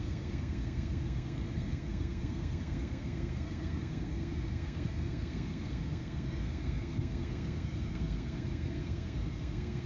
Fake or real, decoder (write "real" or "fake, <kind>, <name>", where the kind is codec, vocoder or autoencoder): fake, codec, SNAC